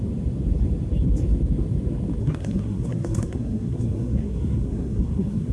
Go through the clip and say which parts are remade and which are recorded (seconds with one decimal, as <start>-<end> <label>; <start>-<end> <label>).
0.0-2.2 recorded; 2.2-5.5 remade